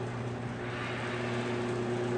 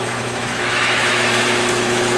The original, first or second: first